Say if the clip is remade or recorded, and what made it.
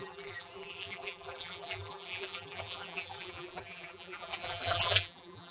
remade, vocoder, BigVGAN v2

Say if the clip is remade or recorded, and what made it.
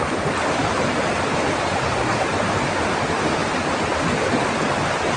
recorded